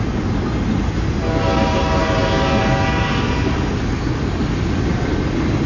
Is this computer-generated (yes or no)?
no